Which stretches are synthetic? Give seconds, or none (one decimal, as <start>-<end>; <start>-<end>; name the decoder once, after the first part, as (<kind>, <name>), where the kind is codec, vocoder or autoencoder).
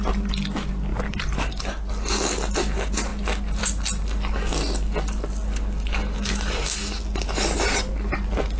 none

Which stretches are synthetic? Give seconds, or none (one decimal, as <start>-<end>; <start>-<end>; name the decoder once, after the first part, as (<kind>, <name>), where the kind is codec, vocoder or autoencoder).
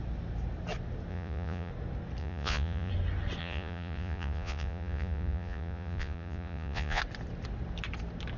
1.1-1.7 (vocoder, Vocos); 2.2-2.9; 3.4-7.0